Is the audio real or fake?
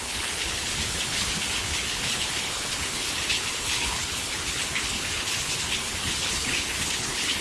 fake